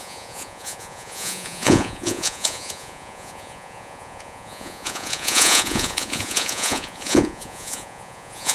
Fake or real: fake